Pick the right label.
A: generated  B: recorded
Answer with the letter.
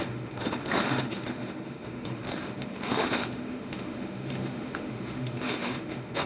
A